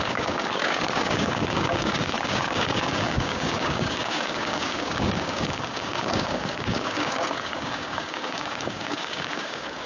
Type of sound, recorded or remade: remade